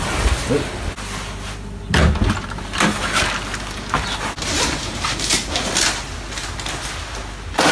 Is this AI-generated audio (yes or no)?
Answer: no